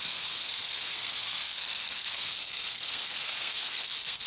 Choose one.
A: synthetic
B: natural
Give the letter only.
A